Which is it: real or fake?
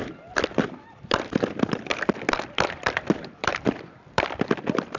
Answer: fake